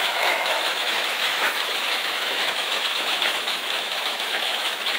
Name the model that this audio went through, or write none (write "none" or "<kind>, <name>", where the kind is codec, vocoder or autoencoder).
autoencoder, DAC-VAE